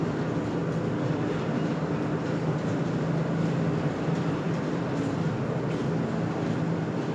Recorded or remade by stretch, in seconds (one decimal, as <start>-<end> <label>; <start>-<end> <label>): 0.0-7.1 recorded